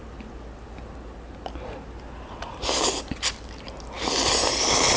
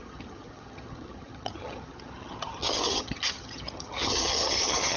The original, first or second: first